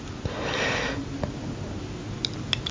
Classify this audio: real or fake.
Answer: real